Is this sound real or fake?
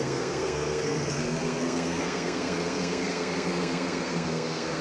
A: fake